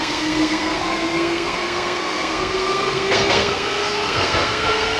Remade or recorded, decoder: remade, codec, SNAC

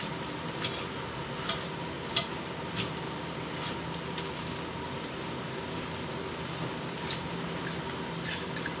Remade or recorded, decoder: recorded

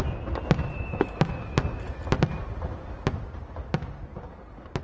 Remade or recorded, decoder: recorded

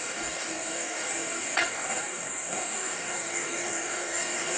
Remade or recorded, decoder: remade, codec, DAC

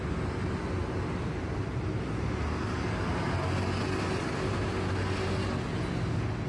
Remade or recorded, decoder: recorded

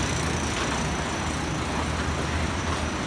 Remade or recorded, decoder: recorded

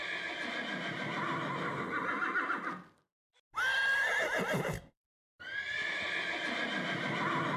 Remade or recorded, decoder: recorded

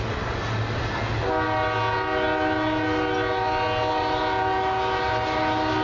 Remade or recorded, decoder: recorded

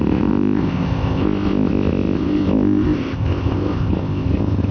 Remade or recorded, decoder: remade, codec, ZipCodec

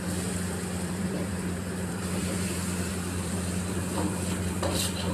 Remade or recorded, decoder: remade, vocoder, BigVGAN v2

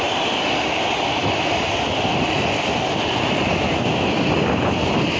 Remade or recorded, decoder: recorded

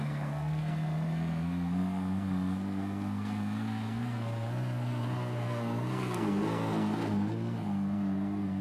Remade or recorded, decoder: remade, codec, SNAC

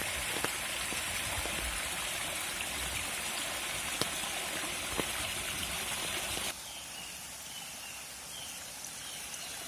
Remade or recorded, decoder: recorded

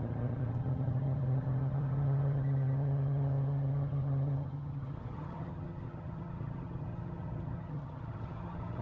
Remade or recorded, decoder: remade, vocoder, HiFi-GAN